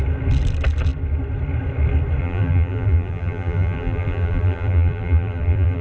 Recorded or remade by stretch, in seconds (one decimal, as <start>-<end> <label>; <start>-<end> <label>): 0.0-2.2 recorded; 2.2-5.8 remade